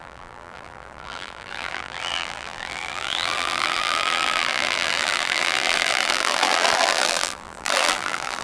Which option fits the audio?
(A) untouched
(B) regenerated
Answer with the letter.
B